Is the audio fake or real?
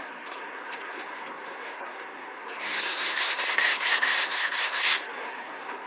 fake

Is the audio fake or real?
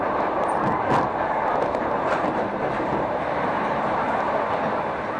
real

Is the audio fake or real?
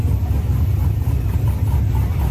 real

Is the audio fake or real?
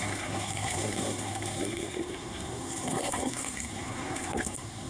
fake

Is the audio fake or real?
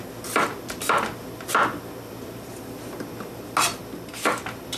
real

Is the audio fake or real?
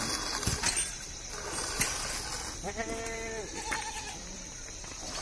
real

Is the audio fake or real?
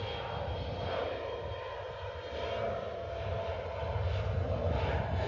real